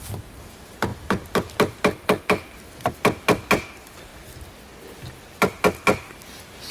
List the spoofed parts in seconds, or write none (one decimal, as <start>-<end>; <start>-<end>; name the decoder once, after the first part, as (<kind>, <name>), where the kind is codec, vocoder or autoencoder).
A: none

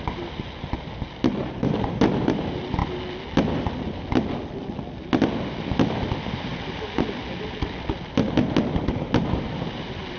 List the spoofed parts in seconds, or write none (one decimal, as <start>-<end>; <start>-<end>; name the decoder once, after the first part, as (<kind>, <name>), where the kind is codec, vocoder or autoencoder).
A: 1.4-2.0 (vocoder, BigVGAN v2)